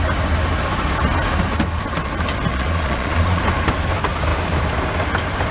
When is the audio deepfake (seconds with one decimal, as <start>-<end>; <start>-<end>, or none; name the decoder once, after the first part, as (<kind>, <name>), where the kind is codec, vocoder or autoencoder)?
2.5-3.4 (vocoder, Vocos)